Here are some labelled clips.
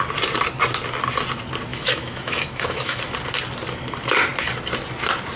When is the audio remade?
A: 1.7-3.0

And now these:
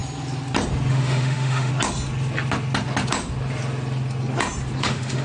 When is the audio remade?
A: 0.9-1.7; 4.8-5.2

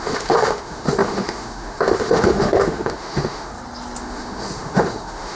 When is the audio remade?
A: 0.0-3.5; 4.0-5.4